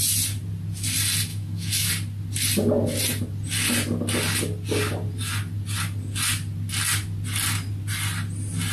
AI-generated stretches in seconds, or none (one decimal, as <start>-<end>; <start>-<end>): 1.3-1.9